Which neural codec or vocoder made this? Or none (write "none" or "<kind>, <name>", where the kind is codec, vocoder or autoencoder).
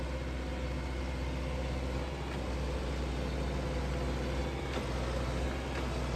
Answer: none